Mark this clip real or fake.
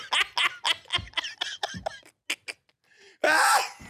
real